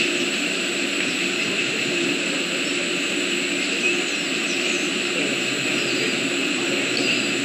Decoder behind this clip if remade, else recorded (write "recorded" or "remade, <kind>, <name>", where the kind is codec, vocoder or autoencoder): remade, vocoder, BigVGAN v2